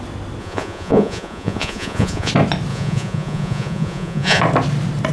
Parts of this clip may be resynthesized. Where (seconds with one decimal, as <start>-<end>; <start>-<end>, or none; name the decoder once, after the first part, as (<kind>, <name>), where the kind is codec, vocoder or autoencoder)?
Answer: 0.4-2.3 (vocoder, Vocos); 2.7-4.4